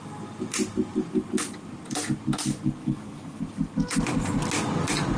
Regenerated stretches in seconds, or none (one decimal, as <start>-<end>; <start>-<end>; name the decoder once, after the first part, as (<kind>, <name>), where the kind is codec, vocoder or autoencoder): 2.8-3.4 (autoencoder, DAC-VAE)